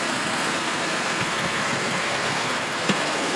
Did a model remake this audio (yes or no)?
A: yes